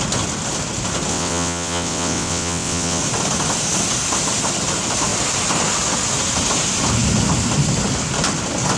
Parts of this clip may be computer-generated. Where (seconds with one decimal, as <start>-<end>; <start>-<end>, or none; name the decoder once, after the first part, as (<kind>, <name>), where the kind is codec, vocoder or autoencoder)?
1.1-3.0 (vocoder, WaveNeXt)